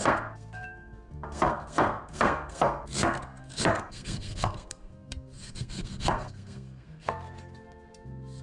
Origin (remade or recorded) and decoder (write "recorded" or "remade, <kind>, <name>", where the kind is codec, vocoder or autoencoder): remade, codec, SNAC